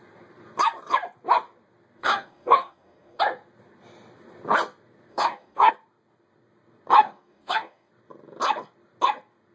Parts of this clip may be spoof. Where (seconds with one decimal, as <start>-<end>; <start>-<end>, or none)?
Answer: 2.0-3.2; 5.1-5.7; 7.0-7.9

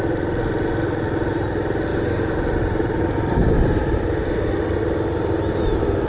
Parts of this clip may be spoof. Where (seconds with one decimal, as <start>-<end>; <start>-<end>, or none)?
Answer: 1.9-4.0

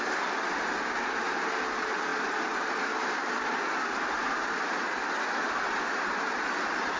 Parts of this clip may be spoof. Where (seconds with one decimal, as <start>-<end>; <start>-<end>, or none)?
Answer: none

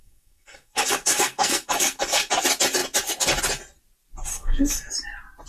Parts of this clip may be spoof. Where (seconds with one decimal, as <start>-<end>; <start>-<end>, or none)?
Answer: 0.0-2.3; 4.3-4.9

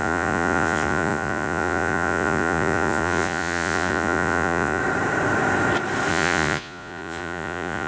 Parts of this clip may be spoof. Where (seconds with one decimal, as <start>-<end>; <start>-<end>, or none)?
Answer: 0.0-4.8; 6.1-7.9

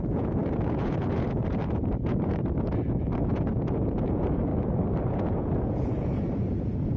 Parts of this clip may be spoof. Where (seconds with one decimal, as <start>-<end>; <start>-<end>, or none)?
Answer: 0.0-4.5; 5.1-7.0

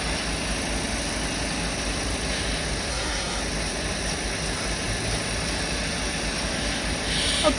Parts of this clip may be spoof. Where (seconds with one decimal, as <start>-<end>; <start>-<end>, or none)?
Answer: 2.9-3.4